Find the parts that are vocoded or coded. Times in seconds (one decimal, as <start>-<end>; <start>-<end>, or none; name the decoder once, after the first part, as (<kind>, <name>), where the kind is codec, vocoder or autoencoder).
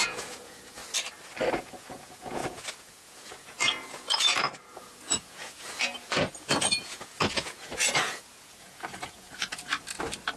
0.0-0.8 (vocoder, Vocos); 1.5-9.6